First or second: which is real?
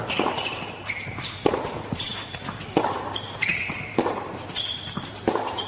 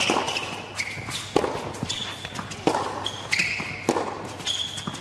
second